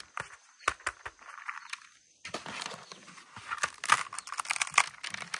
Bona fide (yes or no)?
yes